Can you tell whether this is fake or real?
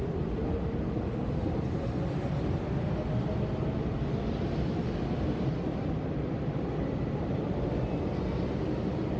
real